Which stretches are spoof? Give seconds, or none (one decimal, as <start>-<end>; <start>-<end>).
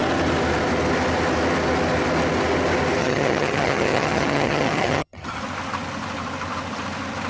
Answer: 3.0-5.4